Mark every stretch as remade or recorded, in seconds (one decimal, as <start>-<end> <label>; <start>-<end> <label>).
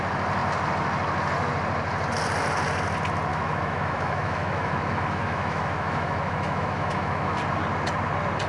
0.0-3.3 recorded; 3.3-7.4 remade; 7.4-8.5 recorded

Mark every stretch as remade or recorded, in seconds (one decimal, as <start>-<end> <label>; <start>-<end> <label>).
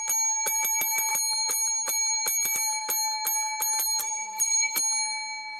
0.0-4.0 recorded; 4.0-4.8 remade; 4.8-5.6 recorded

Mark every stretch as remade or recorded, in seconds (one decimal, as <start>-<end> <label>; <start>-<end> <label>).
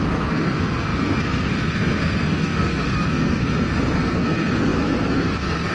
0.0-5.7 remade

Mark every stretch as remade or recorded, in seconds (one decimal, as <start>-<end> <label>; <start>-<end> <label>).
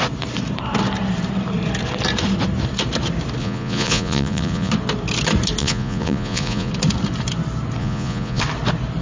0.0-3.4 recorded; 3.4-4.7 remade; 4.7-5.6 recorded; 5.6-6.7 remade; 6.7-7.8 recorded; 7.8-8.4 remade; 8.4-9.0 recorded